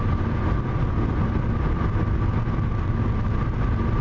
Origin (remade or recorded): recorded